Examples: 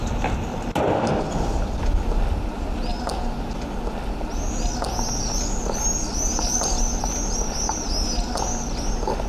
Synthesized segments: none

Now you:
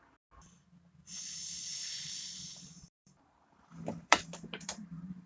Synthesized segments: 1.7-5.3 (vocoder, BigVGAN v2)

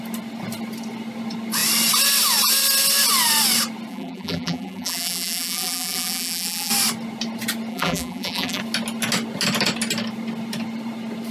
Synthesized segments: 3.9-6.7 (vocoder, BigVGAN v2); 7.7-8.6

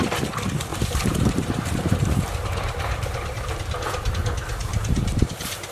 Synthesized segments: 0.7-4.1 (vocoder, BigVGAN v2); 4.7-5.3